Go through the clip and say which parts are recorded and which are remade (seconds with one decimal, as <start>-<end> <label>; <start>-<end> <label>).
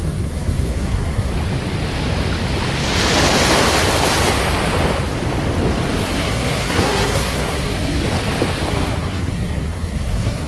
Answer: 0.0-1.3 remade; 1.3-6.0 recorded; 6.0-8.0 remade; 8.0-8.7 recorded; 8.7-10.5 remade